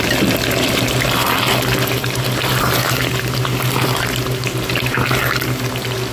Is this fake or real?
real